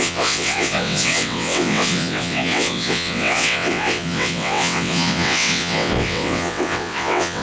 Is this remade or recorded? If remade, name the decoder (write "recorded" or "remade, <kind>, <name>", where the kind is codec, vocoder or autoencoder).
remade, vocoder, WaveNeXt